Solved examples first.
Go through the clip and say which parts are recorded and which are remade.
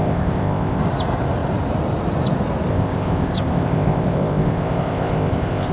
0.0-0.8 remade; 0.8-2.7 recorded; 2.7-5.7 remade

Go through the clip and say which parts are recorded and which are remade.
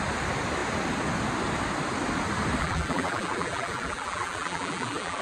0.0-2.6 recorded; 2.6-5.2 remade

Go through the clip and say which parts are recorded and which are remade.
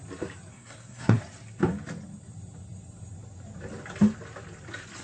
0.0-0.5 recorded; 0.5-1.2 remade; 1.2-5.0 recorded